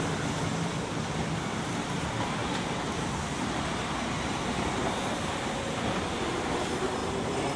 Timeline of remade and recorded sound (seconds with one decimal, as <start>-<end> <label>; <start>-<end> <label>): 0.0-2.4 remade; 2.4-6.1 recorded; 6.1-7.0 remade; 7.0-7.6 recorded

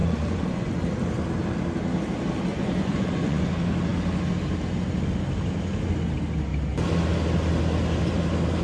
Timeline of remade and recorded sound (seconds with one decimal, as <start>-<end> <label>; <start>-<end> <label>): 0.0-0.8 remade; 0.8-2.5 recorded; 2.5-3.5 remade; 3.5-8.6 recorded

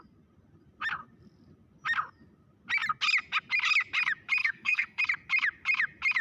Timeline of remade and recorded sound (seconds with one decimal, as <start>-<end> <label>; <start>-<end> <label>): 0.0-4.4 recorded; 4.4-5.0 remade; 5.0-6.2 recorded

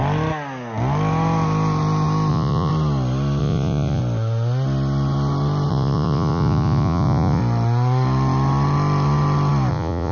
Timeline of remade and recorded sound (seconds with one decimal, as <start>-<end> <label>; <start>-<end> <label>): 0.0-2.3 recorded; 2.3-2.7 remade; 2.7-3.4 recorded; 3.4-4.0 remade; 4.0-5.7 recorded; 5.7-7.4 remade; 7.4-9.7 recorded; 9.7-10.1 remade

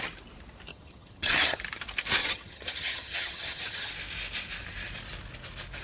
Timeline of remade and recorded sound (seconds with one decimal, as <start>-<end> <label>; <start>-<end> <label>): 0.0-0.7 recorded; 0.7-1.6 remade; 1.6-2.2 recorded; 2.2-3.9 remade; 3.9-5.8 recorded

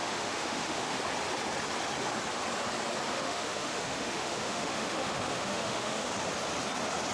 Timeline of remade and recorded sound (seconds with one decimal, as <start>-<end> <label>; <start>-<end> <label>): 0.0-1.0 remade; 1.0-3.1 recorded; 3.1-6.1 remade; 6.1-7.1 recorded

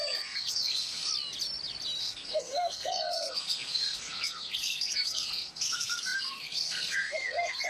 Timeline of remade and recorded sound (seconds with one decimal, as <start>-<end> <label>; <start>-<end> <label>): 0.0-1.1 remade; 1.1-2.0 recorded; 2.0-7.7 remade

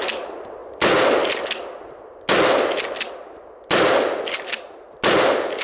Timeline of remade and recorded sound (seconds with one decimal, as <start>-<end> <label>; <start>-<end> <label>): 0.0-5.6 recorded